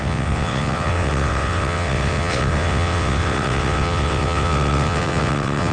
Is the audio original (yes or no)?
no